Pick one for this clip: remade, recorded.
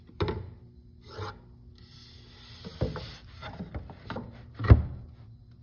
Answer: recorded